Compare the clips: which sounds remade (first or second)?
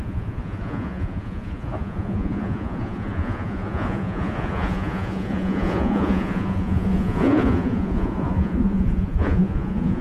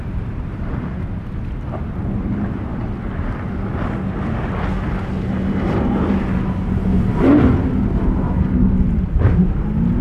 first